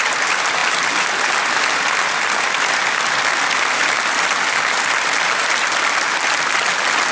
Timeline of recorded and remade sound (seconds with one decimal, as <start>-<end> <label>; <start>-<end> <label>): 0.0-7.1 recorded